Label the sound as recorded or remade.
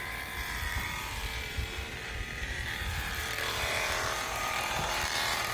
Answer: remade